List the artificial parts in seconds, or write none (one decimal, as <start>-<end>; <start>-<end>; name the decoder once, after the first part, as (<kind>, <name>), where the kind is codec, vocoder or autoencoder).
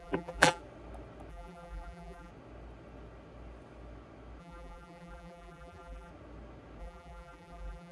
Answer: 0.0-0.6 (vocoder, BigVGAN v2); 1.3-2.3; 4.4-6.1; 6.8-7.9